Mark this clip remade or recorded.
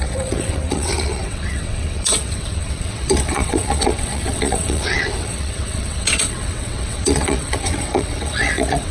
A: remade